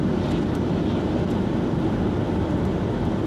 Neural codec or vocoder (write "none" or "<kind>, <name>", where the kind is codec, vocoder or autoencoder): none